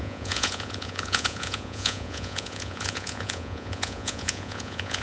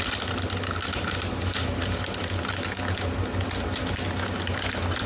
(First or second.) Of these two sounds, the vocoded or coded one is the first